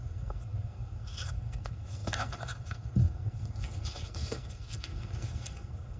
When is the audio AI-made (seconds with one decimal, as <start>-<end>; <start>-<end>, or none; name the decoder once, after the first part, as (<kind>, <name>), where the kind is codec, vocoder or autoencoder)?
0.0-6.0 (codec, SNAC)